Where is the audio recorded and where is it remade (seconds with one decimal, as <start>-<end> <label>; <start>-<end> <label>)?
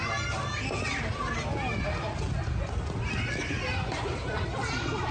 0.0-5.1 recorded